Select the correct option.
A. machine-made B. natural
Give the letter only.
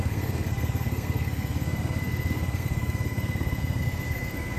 A